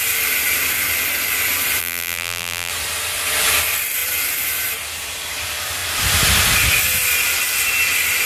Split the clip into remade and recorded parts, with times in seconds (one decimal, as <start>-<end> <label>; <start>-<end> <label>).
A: 0.0-1.8 recorded; 1.8-2.7 remade; 2.7-8.3 recorded